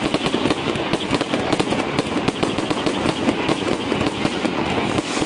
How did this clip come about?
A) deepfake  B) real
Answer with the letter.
A